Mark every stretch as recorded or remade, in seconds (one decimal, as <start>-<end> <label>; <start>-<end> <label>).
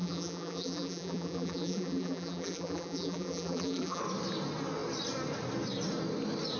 0.0-4.0 remade; 4.0-6.6 recorded